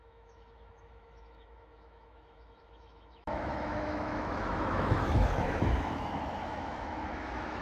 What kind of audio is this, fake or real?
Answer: fake